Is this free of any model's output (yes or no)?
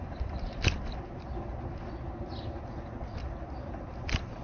yes